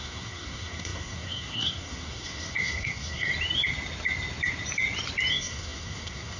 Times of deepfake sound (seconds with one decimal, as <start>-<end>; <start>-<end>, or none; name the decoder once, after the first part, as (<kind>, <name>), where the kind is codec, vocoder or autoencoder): 0.0-3.3 (codec, SNAC); 5.3-6.4